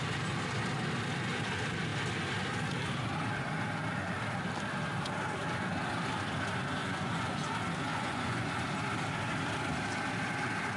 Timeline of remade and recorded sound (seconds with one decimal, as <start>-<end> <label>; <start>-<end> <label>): 0.0-6.8 recorded; 6.8-7.5 remade; 7.5-7.9 recorded; 7.9-8.6 remade; 8.6-10.8 recorded